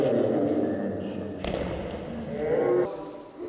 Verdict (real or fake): real